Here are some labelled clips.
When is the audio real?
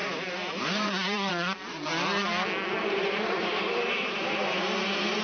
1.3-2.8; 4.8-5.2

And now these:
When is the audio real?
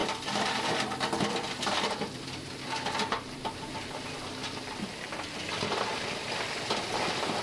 4.0-4.4; 7.0-7.4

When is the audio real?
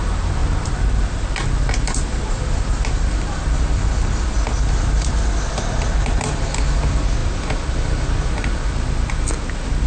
0.0-0.4; 5.6-9.9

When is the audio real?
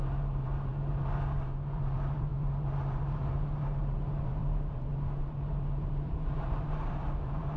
none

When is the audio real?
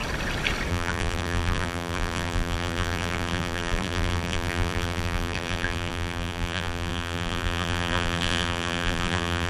0.0-0.7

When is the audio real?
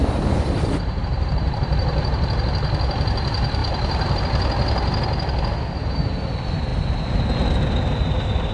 2.4-3.6; 4.2-8.5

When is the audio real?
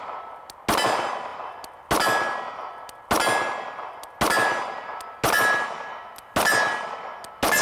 0.0-7.6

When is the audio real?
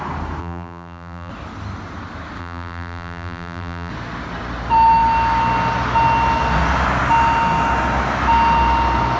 0.0-0.4; 1.3-2.4; 3.9-9.2